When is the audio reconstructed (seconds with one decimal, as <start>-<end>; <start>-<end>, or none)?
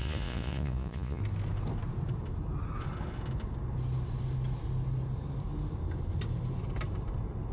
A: 0.0-1.2